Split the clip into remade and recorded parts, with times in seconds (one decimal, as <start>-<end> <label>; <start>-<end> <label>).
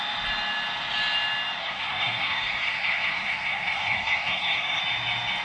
0.0-1.6 recorded; 1.6-4.8 remade; 4.8-5.4 recorded